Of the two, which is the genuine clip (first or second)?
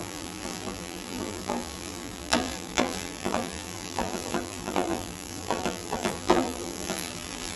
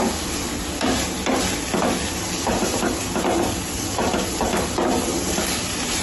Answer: second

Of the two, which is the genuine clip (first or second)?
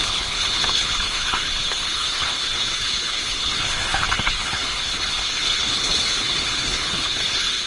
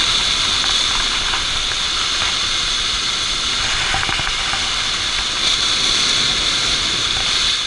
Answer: second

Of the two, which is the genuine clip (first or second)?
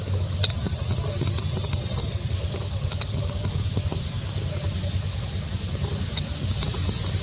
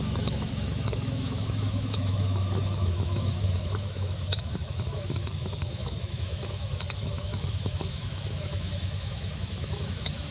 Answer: first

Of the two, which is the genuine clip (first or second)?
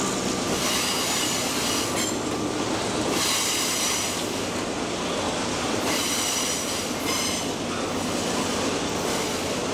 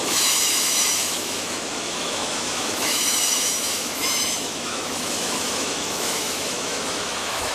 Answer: first